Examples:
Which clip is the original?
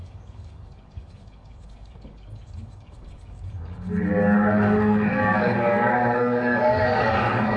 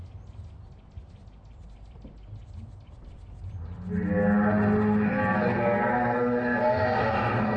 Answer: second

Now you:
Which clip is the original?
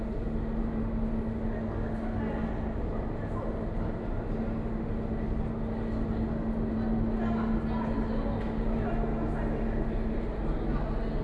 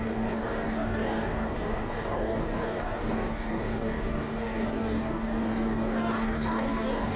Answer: first